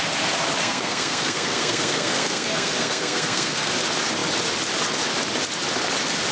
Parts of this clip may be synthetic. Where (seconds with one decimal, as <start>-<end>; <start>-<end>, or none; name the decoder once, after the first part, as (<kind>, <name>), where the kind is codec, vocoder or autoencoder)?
0.6-3.7 (codec, SNAC)